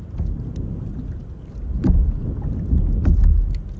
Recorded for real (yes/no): yes